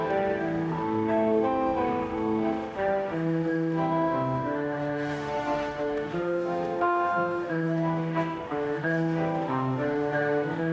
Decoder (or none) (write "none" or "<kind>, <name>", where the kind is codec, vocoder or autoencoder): autoencoder, DAC-VAE